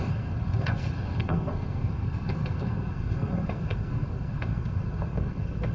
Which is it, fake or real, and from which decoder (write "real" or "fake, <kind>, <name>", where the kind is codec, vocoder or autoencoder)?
fake, codec, SNAC